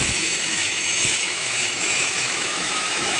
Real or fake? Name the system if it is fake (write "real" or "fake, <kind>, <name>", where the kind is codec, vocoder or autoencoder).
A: fake, autoencoder, DAC-VAE